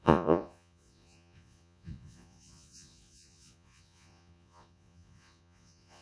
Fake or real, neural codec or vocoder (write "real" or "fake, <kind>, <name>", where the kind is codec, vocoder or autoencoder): fake, vocoder, Vocos